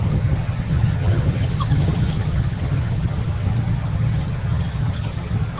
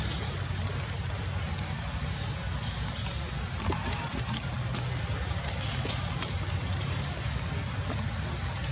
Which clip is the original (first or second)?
second